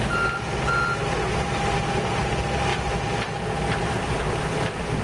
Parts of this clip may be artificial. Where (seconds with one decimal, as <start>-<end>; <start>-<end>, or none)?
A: none